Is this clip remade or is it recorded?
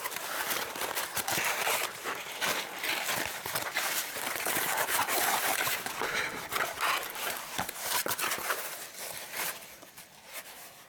remade